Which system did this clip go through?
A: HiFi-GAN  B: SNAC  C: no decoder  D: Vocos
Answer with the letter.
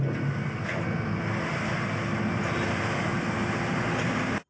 C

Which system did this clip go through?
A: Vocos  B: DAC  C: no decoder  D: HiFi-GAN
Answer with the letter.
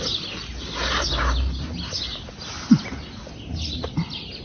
C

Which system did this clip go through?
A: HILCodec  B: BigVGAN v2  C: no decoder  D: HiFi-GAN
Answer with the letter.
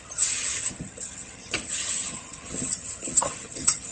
D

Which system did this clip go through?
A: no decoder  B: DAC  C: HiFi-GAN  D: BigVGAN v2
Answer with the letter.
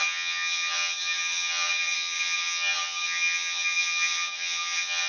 C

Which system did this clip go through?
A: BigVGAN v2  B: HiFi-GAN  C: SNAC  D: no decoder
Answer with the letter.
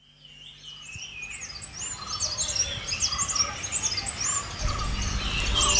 D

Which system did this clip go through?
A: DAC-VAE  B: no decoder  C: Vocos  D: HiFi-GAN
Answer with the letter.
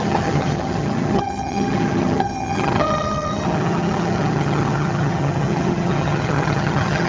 D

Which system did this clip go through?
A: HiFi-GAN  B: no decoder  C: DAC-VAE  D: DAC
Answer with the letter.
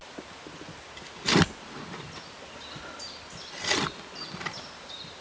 B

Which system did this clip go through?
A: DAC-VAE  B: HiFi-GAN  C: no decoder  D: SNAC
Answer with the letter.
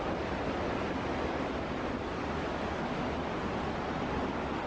C